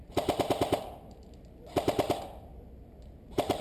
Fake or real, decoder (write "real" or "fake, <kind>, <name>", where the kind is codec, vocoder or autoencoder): real